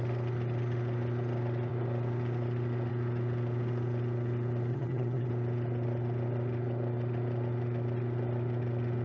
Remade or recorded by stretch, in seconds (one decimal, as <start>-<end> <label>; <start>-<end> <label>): 0.0-4.7 recorded; 4.7-5.3 remade; 5.3-9.0 recorded